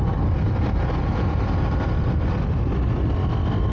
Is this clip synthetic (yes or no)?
no